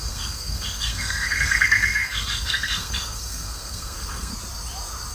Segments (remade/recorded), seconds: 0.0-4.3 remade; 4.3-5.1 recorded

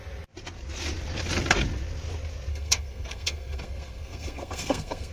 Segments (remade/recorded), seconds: 0.0-2.5 recorded; 2.5-5.1 remade

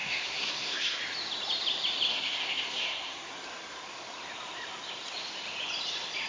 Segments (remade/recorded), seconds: 0.0-1.0 remade; 1.0-2.1 recorded; 2.1-3.3 remade; 3.3-6.3 recorded

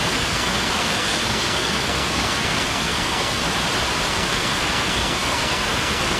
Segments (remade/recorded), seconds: 0.0-3.4 remade; 3.4-4.1 recorded; 4.1-6.2 remade

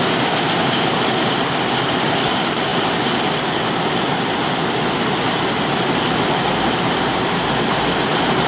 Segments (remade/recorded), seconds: 0.0-8.5 recorded

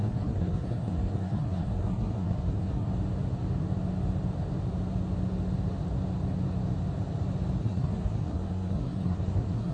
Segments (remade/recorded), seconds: 0.0-2.9 remade; 2.9-7.6 recorded; 7.6-9.7 remade